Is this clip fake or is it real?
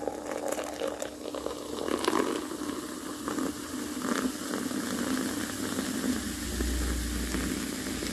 real